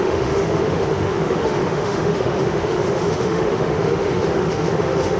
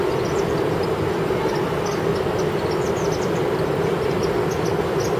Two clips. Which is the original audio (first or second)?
second